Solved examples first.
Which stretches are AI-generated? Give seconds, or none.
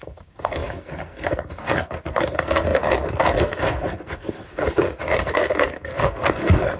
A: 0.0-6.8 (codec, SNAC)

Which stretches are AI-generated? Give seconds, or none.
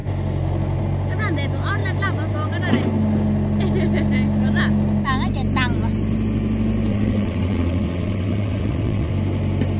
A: 6.9-9.1 (vocoder, WaveNeXt)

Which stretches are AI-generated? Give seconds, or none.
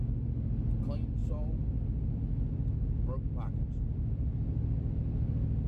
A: none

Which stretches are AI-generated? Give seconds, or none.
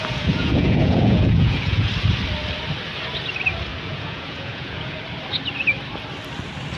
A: 0.0-1.9 (vocoder, Vocos); 3.7-5.0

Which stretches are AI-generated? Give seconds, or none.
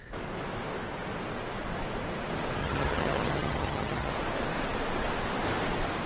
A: 2.6-4.1 (vocoder, HiFi-GAN)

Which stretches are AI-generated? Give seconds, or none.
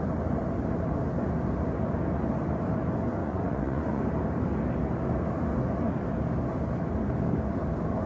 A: 3.2-4.0 (vocoder, Vocos)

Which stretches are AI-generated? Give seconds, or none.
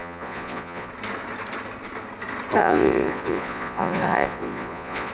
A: 0.0-0.9 (vocoder, Vocos); 2.6-5.1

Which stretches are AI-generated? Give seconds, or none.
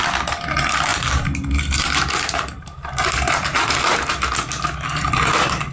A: 0.9-4.1 (vocoder, BigVGAN v2)